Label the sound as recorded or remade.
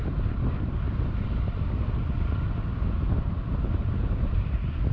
recorded